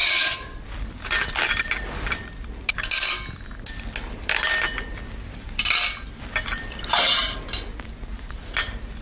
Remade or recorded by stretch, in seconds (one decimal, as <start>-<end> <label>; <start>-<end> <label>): 0.0-0.6 remade; 0.6-9.0 recorded